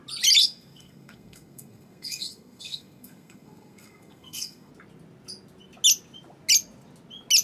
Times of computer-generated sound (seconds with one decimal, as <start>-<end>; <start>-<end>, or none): 0.4-4.7